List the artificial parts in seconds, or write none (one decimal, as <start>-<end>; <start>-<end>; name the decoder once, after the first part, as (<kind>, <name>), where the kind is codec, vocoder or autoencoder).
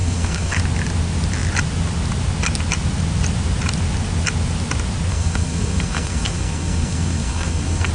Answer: 0.0-0.6 (codec, SNAC); 5.1-7.9